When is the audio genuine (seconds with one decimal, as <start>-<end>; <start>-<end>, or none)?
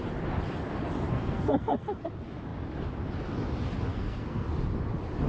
0.0-1.1; 2.1-3.9; 4.5-5.3